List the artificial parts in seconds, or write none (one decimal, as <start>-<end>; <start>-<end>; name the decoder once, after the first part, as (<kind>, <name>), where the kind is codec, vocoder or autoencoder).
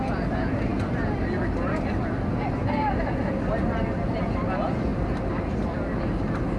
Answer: none